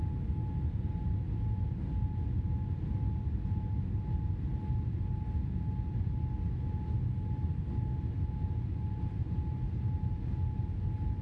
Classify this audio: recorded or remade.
recorded